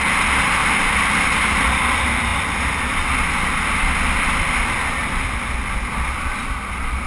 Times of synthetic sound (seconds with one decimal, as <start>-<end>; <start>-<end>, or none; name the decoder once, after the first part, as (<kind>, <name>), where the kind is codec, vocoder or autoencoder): none